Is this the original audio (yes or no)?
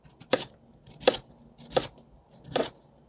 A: yes